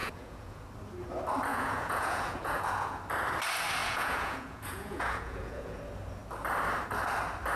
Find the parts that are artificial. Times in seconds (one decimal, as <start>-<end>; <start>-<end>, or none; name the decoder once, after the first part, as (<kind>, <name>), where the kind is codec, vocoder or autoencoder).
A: 0.0-0.6 (vocoder, Vocos); 1.5-3.0; 3.8-5.8